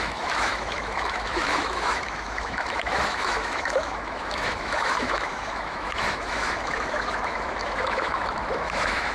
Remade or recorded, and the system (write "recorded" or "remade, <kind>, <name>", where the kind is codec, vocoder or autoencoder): remade, autoencoder, DAC-VAE